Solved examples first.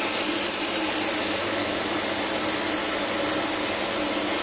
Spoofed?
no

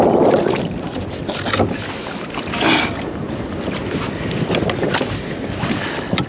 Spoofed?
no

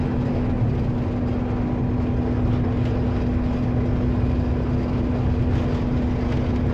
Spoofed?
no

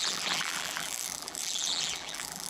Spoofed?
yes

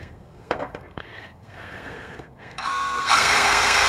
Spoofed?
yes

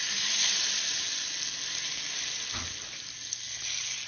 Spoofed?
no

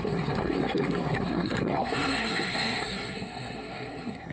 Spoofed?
yes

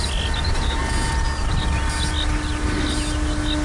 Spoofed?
no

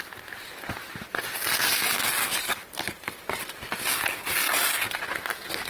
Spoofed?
no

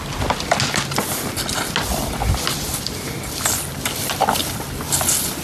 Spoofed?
no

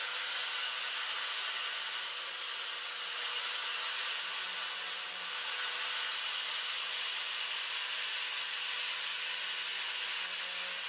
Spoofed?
no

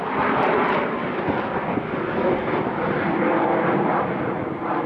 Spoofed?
no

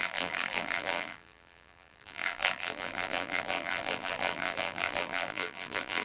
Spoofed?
yes